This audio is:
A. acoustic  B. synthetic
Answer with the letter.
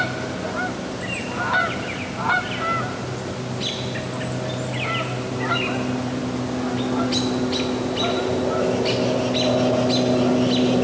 A